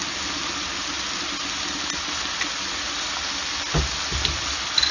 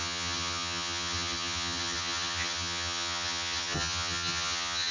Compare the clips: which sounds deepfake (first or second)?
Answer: second